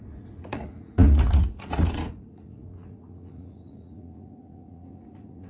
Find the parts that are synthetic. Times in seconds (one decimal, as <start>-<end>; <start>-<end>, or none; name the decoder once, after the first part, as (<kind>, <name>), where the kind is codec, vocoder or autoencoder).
0.0-5.5 (vocoder, Vocos)